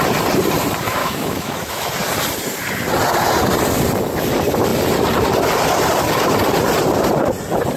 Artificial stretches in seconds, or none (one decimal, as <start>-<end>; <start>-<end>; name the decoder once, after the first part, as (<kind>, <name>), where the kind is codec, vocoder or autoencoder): 1.0-1.9 (autoencoder, DAC-VAE)